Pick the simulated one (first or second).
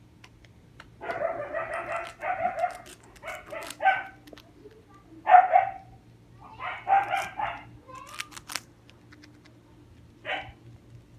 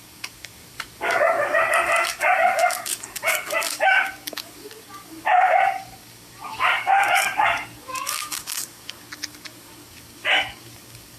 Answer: second